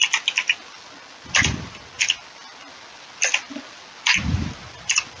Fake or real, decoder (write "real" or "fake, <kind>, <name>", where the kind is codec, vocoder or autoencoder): real